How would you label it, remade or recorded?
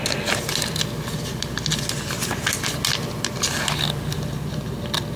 recorded